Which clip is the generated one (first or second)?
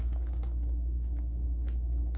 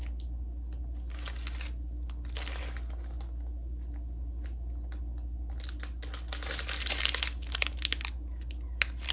first